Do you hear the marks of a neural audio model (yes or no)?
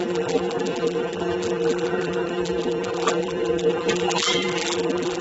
yes